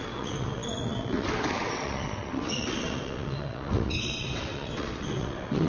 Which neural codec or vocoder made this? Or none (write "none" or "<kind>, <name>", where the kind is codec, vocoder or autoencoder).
vocoder, WaveNeXt